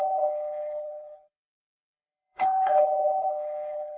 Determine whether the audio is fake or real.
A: fake